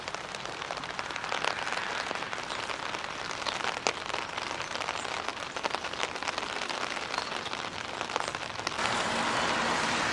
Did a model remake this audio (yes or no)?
no